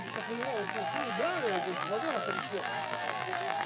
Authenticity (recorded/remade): remade